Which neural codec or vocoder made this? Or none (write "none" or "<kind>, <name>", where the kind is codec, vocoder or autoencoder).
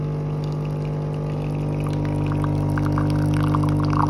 none